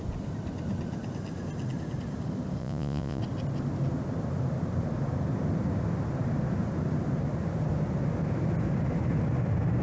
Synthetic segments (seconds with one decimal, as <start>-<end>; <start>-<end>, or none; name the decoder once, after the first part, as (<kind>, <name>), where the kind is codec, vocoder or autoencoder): 2.6-3.2 (vocoder, Vocos)